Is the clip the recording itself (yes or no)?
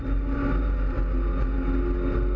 yes